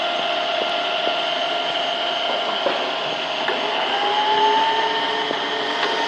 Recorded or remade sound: recorded